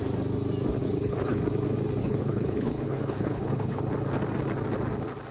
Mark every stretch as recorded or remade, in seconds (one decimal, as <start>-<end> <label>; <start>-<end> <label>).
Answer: 0.0-0.8 recorded; 0.8-1.4 remade; 1.4-2.0 recorded; 2.0-3.8 remade; 3.8-5.3 recorded